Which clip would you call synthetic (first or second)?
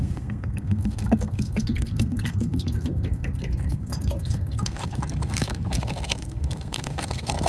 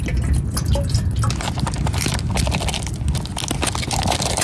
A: first